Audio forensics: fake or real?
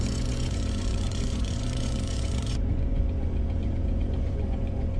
fake